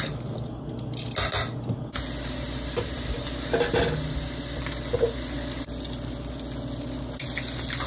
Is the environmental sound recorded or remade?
recorded